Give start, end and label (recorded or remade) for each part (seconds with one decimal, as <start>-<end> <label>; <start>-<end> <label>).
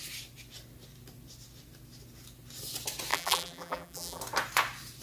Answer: 0.0-3.1 recorded; 3.1-4.2 remade; 4.2-5.0 recorded